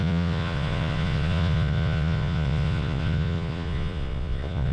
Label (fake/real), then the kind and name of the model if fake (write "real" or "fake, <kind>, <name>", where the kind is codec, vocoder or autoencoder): fake, vocoder, Vocos